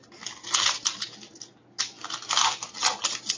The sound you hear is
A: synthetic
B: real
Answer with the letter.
B